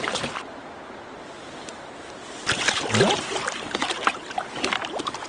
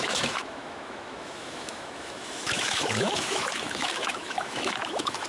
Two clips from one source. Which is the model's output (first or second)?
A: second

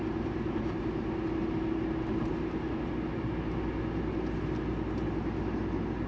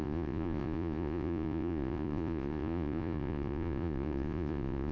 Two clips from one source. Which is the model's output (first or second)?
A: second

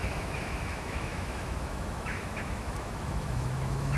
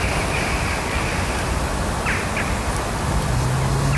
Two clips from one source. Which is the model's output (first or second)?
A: first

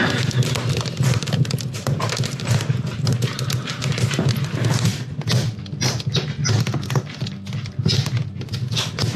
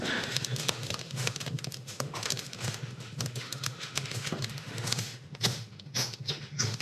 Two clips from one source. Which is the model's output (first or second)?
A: second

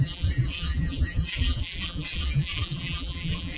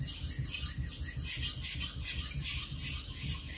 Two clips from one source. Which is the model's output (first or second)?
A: first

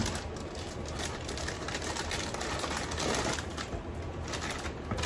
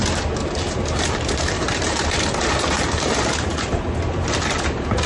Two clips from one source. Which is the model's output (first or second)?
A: second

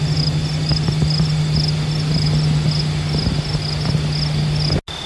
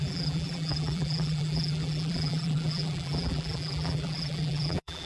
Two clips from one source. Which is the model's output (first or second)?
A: second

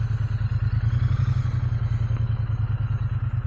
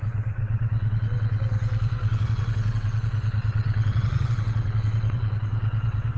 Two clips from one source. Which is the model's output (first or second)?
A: second